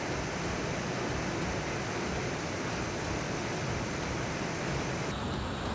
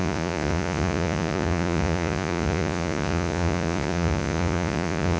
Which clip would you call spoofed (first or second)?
second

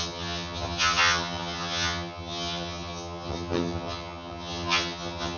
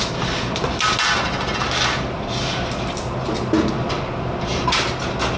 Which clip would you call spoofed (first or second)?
first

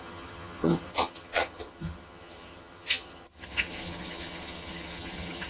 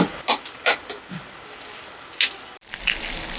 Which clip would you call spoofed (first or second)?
first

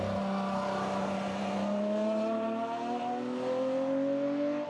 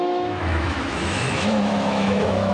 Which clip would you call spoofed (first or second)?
second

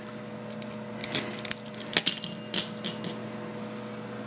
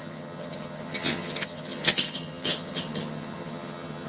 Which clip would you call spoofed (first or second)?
second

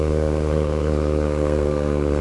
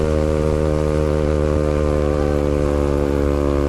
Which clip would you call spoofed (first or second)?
first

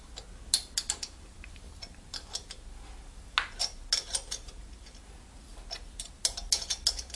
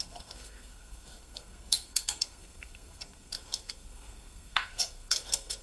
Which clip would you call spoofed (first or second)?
second